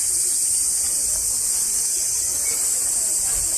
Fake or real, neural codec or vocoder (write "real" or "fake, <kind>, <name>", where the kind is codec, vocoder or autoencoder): real